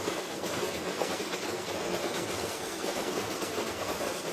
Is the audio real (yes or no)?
no